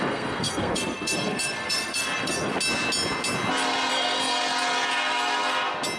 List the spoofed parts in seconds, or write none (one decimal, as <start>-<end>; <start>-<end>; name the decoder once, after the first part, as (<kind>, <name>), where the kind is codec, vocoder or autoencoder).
0.0-2.5 (codec, SNAC); 3.9-4.4